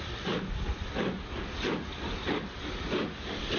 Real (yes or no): yes